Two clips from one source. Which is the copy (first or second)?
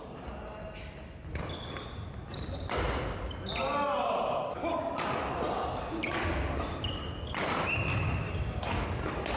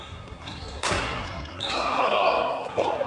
second